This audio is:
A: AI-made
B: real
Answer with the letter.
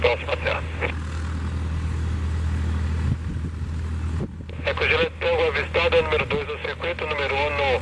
B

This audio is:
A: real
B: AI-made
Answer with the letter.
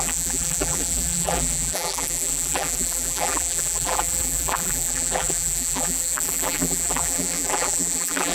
B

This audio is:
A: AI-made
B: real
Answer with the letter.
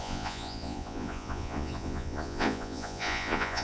A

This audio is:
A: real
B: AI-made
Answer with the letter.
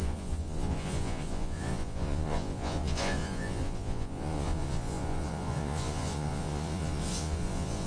B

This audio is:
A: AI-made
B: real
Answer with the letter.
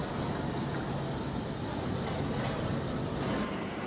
B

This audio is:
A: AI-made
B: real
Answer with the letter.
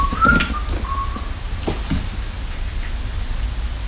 B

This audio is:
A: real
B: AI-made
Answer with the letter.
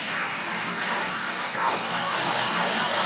B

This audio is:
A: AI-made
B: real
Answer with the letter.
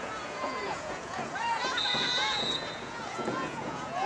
A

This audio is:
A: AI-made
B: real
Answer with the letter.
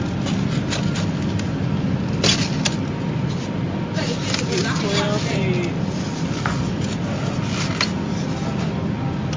B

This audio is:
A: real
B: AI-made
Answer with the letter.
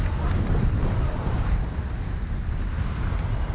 A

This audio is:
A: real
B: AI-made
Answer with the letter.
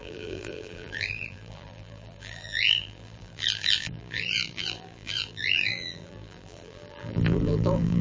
B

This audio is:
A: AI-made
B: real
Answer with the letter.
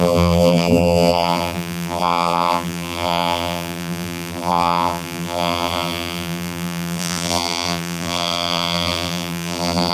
A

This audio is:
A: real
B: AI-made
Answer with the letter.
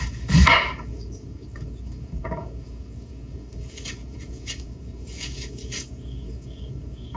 B